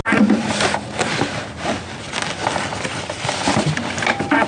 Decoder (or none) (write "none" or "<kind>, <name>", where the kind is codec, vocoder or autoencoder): none